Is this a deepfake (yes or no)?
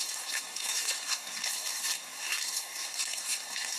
yes